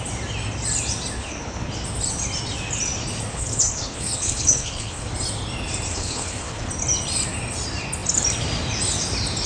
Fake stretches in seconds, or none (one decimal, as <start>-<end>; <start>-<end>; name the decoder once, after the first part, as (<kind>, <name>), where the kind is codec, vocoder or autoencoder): 1.2-1.7 (codec, HILCodec); 3.3-5.1; 5.9-6.7